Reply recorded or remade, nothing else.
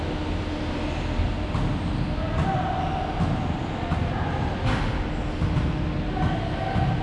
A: recorded